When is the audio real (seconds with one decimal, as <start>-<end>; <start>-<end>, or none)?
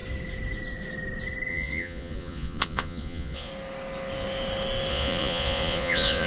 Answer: 0.0-1.5; 3.5-4.9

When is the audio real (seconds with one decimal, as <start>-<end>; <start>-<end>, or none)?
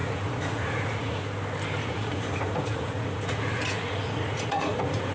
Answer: 1.3-1.8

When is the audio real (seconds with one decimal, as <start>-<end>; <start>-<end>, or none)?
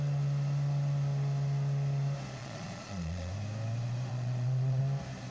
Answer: 0.0-2.4; 3.3-4.1; 4.8-5.3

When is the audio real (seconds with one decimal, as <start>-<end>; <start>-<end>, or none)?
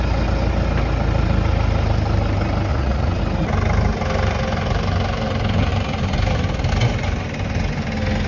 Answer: 0.0-2.7; 3.2-8.3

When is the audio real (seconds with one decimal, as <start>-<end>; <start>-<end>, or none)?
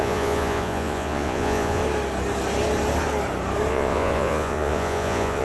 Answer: 1.8-3.7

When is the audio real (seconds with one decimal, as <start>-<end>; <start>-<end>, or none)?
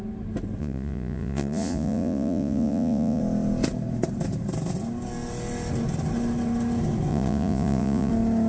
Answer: 0.0-0.6; 3.2-7.1; 8.1-8.5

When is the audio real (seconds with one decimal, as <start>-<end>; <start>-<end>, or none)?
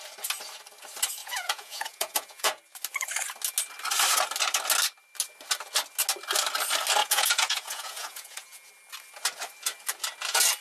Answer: 0.0-1.2; 2.6-7.0; 8.7-10.6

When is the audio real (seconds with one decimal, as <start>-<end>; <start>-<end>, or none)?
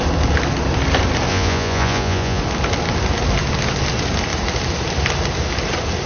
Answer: 0.0-1.3; 2.4-6.1